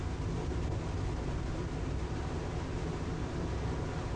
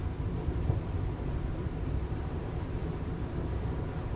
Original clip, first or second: first